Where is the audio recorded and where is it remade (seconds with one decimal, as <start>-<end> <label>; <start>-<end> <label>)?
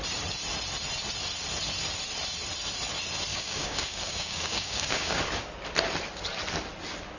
0.0-3.3 recorded; 3.3-5.2 remade; 5.2-7.2 recorded